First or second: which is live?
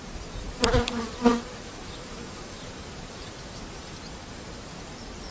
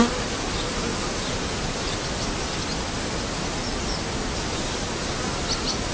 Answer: second